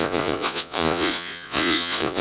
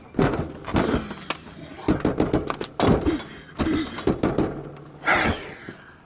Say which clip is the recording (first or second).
second